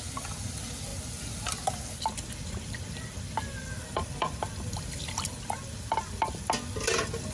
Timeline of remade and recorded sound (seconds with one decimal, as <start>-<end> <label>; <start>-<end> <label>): 0.0-7.3 recorded